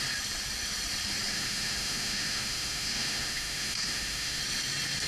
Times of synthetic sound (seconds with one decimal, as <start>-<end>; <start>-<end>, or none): 1.3-4.4